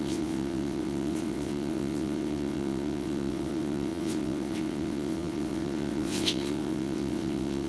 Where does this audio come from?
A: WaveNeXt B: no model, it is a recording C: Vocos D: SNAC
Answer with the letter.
A